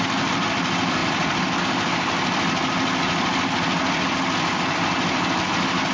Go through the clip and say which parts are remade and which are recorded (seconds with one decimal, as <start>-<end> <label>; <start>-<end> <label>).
0.0-5.9 recorded